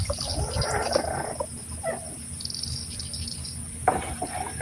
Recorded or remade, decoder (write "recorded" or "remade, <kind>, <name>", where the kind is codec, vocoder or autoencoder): recorded